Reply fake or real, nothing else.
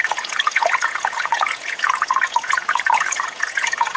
fake